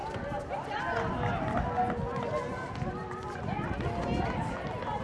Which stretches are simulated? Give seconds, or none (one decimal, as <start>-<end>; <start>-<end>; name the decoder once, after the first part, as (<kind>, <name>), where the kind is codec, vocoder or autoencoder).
0.0-0.8 (vocoder, BigVGAN v2)